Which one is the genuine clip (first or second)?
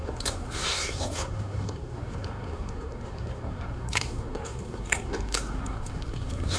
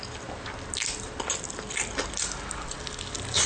second